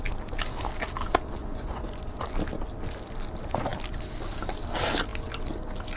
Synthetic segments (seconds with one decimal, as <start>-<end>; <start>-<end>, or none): 1.4-2.0

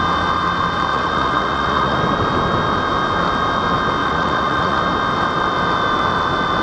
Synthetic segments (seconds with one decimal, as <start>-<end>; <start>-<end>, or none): 0.9-2.0; 4.0-4.8